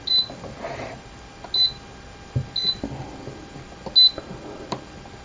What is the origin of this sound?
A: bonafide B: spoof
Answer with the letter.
A